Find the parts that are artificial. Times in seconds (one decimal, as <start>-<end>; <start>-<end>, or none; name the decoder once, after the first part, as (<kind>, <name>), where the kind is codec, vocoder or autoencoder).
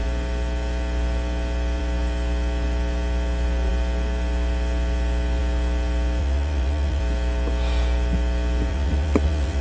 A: 6.2-7.0 (vocoder, Vocos); 8.7-9.6